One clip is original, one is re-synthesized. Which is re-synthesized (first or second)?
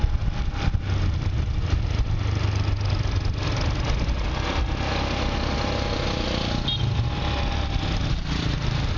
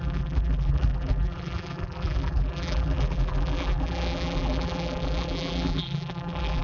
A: second